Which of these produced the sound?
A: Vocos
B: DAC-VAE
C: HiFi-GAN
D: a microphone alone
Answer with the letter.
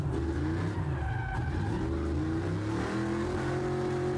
D